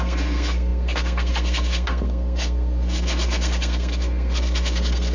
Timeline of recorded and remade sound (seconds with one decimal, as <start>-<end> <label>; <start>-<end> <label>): 0.0-5.1 remade